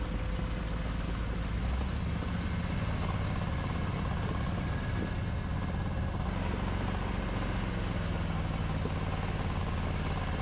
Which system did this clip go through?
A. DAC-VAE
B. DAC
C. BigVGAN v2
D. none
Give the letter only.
D